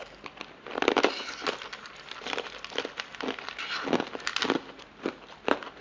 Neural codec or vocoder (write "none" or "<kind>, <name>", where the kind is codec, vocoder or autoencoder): none